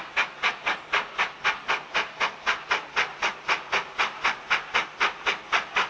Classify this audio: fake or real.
real